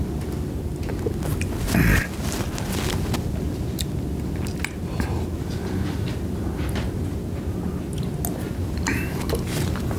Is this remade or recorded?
recorded